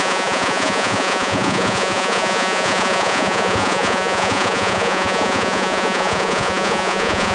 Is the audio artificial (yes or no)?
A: yes